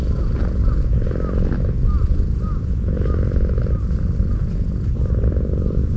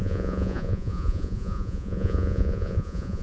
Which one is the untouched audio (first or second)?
first